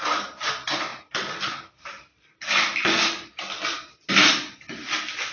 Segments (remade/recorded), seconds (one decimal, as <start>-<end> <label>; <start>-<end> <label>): 0.0-5.3 recorded